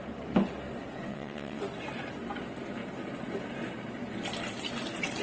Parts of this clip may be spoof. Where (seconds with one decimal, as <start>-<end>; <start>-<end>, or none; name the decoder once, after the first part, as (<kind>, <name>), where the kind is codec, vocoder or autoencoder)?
1.1-1.6 (vocoder, WaveNeXt)